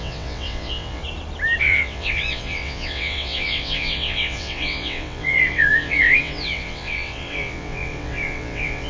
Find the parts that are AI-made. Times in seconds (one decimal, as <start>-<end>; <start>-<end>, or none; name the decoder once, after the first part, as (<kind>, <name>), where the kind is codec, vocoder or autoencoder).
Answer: 0.0-1.0 (vocoder, WaveNeXt); 1.6-8.9